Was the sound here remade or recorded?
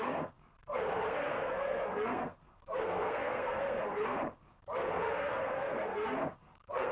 remade